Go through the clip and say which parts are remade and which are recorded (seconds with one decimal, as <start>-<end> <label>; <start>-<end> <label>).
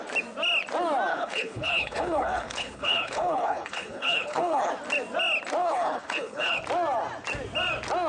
0.0-1.1 recorded; 1.1-4.7 remade; 4.7-5.6 recorded; 5.6-6.6 remade; 6.6-8.1 recorded